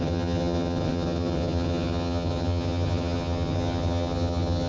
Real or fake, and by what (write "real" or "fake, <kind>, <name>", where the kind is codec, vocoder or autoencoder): fake, vocoder, HiFi-GAN